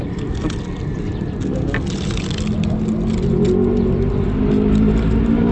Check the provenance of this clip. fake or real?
real